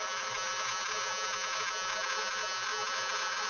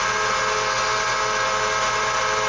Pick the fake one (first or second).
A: first